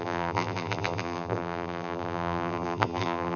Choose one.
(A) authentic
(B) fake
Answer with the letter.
B